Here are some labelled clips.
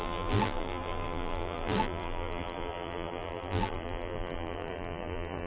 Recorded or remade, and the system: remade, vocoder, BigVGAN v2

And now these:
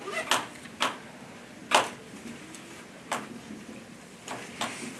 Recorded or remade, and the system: recorded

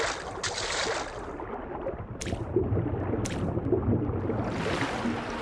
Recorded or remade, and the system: recorded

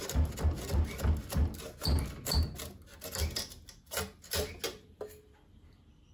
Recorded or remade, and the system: recorded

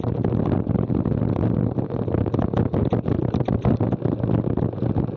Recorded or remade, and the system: recorded